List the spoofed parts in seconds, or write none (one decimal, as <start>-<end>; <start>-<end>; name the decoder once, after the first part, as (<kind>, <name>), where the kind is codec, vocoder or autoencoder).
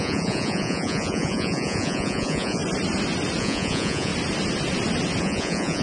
0.0-2.6 (vocoder, Vocos); 3.4-4.1; 5.2-5.8